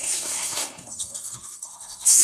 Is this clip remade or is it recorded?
remade